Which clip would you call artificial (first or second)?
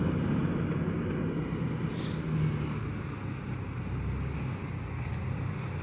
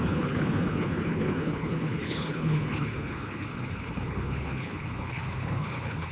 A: second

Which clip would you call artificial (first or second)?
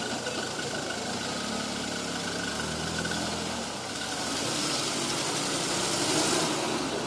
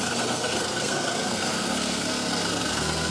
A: second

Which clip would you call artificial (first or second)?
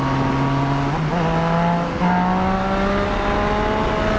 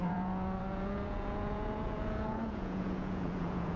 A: second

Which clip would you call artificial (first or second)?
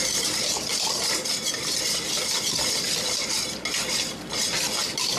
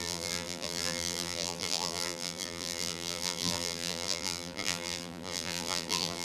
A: second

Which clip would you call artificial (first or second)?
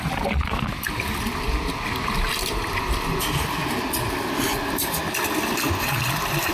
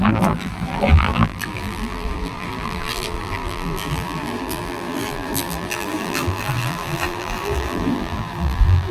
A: second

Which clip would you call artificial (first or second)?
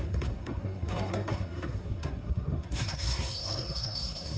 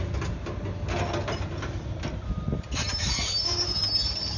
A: first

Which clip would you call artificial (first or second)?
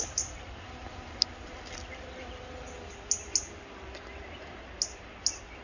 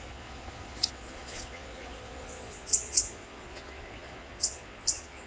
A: second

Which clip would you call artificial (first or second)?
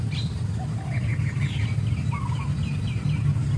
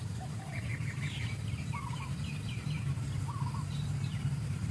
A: second